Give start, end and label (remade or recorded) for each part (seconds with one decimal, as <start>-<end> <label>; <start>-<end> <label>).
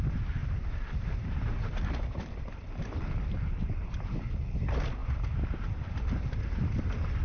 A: 0.0-0.4 recorded; 0.4-4.3 remade; 4.3-5.0 recorded; 5.0-6.2 remade; 6.2-7.2 recorded